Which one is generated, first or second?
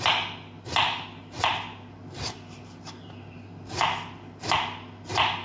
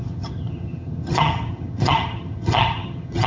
second